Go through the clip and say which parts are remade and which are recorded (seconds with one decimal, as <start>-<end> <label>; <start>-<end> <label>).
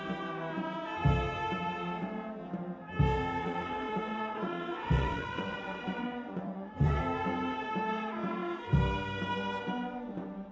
0.0-3.4 recorded; 3.4-7.0 remade; 7.0-10.5 recorded